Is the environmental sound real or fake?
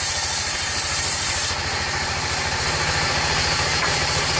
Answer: fake